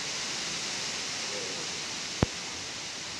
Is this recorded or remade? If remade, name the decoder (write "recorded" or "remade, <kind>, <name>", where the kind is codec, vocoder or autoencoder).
recorded